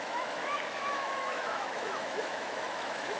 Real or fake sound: fake